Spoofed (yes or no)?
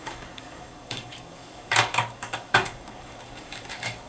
yes